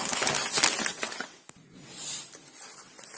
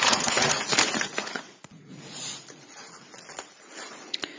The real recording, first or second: first